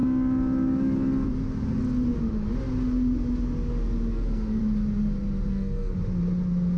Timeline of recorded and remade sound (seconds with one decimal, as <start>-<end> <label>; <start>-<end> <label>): 0.0-4.1 recorded; 4.1-4.6 remade; 4.6-5.5 recorded; 5.5-5.9 remade; 5.9-6.8 recorded